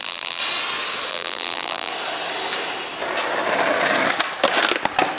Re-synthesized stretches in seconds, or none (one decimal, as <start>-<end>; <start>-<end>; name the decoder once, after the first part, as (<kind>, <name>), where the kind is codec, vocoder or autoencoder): 0.0-0.4 (vocoder, BigVGAN v2); 1.1-1.9